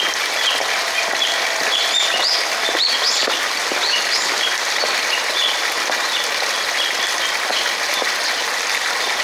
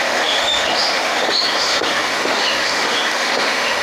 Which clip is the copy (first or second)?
second